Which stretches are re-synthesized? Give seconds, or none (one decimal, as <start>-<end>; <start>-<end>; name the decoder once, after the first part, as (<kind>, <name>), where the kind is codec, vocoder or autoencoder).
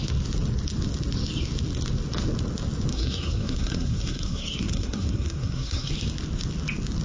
2.9-5.9 (codec, SNAC)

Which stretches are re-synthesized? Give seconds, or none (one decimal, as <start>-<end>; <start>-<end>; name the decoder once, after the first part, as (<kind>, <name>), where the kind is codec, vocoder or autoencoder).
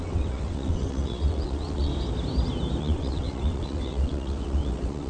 0.0-1.9 (vocoder, WaveNeXt); 2.8-5.1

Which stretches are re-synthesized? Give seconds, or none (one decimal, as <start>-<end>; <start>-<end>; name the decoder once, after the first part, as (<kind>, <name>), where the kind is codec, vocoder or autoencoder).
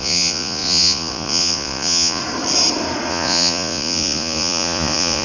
0.0-2.2 (vocoder, Vocos); 3.1-5.2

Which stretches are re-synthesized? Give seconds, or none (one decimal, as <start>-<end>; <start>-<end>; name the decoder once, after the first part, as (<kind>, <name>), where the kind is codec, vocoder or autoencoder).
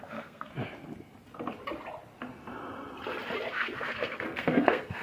0.0-0.5 (codec, SNAC); 3.5-5.0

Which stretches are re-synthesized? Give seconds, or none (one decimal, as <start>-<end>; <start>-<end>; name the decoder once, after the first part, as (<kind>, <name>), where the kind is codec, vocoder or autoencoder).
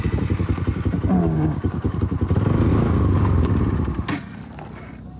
1.2-2.0 (codec, DAC); 2.7-3.5